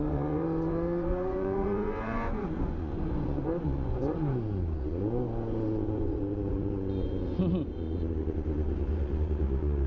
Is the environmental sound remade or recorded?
remade